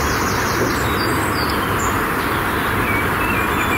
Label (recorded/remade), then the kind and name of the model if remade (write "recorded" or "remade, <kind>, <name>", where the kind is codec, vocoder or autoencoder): recorded